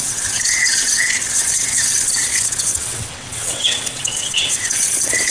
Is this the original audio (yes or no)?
no